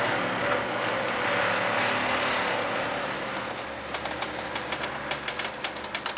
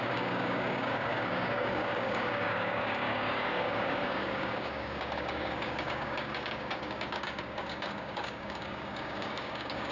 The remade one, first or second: second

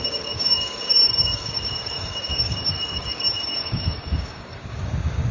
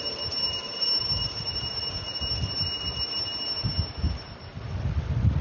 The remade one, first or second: first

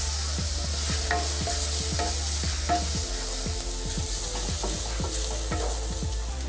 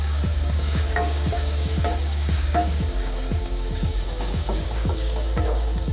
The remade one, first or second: second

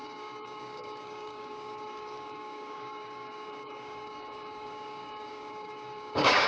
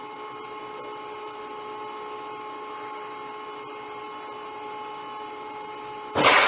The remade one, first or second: first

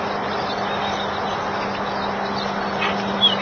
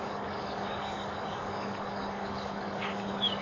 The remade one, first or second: second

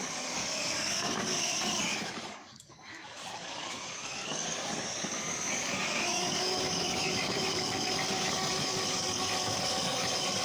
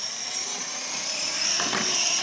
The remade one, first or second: first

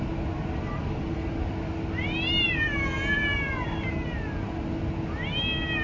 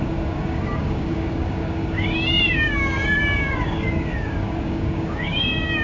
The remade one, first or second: second